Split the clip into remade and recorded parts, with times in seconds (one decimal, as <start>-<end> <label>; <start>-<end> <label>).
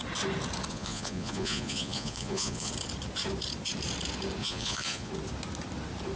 0.0-0.7 recorded; 0.7-2.7 remade; 2.7-4.4 recorded; 4.4-5.1 remade; 5.1-6.2 recorded